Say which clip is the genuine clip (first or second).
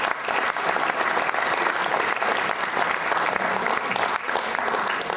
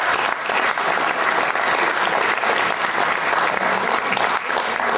second